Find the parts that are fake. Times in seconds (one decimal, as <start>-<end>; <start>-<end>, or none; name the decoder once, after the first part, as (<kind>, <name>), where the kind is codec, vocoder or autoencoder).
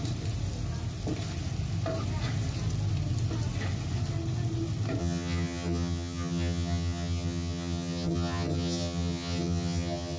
5.0-10.2 (vocoder, HiFi-GAN)